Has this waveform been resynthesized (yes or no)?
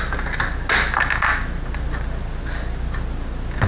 no